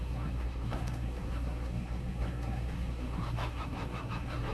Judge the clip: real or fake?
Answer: fake